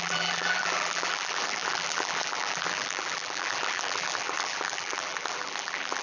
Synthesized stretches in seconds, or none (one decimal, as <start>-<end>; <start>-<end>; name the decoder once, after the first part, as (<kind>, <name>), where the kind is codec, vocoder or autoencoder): 0.0-6.0 (vocoder, BigVGAN v2)